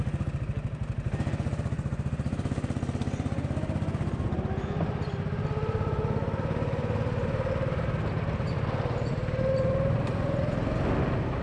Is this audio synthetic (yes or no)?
no